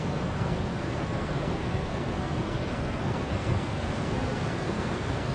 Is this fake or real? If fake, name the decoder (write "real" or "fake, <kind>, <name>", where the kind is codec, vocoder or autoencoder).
fake, codec, SNAC